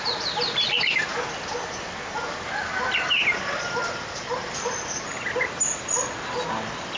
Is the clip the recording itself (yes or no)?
yes